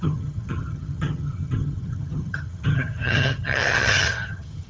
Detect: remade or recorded remade